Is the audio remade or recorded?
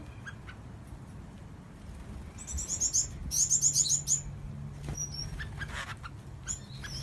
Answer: recorded